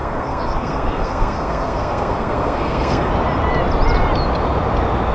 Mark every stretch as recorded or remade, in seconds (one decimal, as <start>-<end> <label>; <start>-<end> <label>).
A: 0.0-3.1 remade; 3.1-5.1 recorded